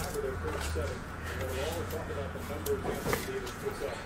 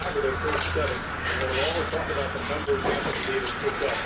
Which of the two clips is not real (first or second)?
first